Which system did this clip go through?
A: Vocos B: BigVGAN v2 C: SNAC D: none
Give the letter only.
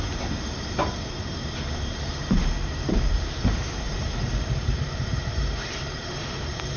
B